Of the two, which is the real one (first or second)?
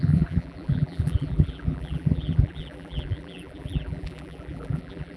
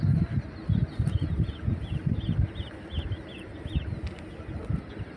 second